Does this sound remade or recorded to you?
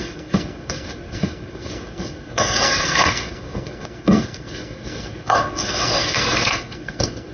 remade